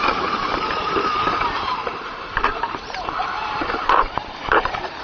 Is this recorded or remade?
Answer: remade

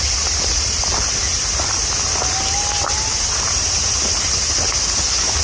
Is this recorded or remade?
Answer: recorded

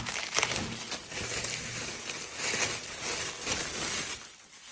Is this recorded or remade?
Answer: recorded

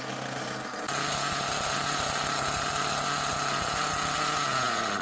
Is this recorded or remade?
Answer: recorded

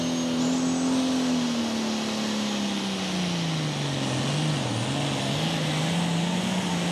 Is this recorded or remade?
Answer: recorded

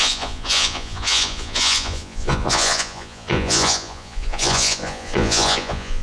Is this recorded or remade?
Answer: remade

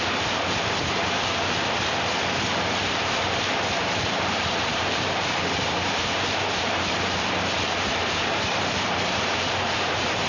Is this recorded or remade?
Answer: remade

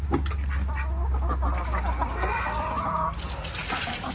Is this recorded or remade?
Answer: recorded